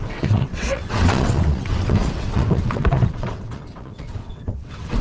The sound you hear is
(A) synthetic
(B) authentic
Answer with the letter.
A